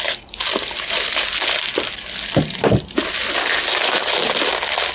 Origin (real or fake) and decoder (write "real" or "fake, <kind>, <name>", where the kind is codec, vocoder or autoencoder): real